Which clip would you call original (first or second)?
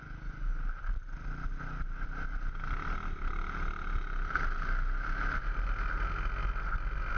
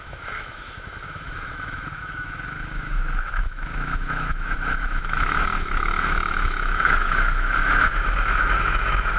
first